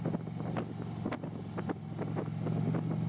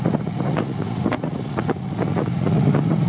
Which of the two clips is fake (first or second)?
second